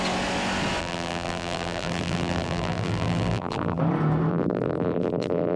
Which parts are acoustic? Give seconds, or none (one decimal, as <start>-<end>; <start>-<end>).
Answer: 0.0-0.8; 3.8-4.3

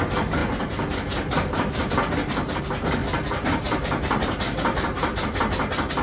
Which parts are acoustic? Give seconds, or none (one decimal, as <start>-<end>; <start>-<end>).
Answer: 0.0-0.4; 2.6-3.0; 5.4-6.0

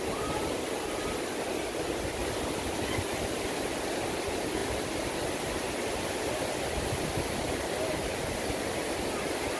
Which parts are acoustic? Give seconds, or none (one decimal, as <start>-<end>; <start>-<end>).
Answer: 0.0-9.6

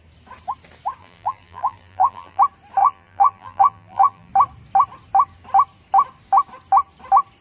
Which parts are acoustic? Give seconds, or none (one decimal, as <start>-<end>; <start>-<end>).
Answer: 0.0-1.0; 2.4-2.8; 4.3-7.4

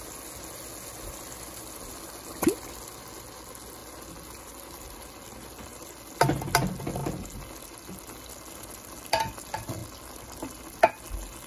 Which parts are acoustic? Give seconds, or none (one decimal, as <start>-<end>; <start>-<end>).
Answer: 0.0-11.5

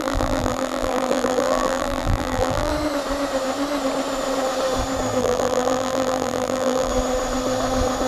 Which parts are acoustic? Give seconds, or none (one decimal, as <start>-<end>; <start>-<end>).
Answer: 2.7-5.2; 6.9-8.1